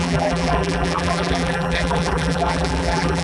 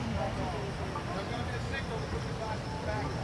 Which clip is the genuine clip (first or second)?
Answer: second